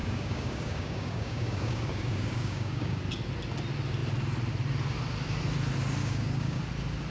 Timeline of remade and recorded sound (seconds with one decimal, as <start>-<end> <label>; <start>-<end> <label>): 0.0-3.0 remade; 3.0-6.0 recorded; 6.0-6.6 remade; 6.6-7.1 recorded